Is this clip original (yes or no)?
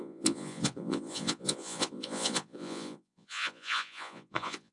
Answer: no